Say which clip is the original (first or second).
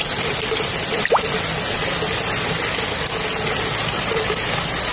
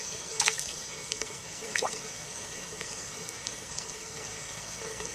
first